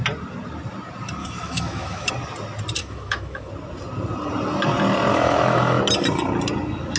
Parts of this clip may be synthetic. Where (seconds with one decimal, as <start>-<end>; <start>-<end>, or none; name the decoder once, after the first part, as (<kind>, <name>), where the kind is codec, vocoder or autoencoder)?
1.2-2.1 (autoencoder, DAC-VAE); 2.8-3.5; 5.1-5.8

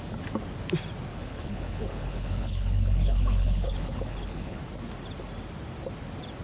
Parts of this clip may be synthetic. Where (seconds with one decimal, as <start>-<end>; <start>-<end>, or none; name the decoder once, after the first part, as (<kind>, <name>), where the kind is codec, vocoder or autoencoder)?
1.1-4.6 (codec, HILCodec)